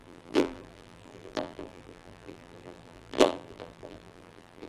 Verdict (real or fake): fake